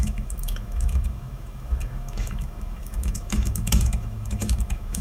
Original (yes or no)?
no